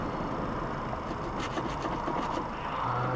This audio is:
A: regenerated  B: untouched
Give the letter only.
B